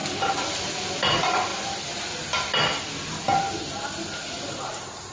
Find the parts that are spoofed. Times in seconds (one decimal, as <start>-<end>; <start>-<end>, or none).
none